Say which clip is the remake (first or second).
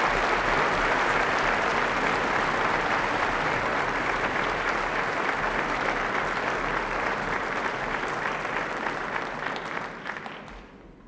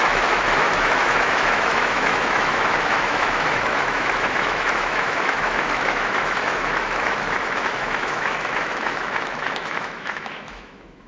second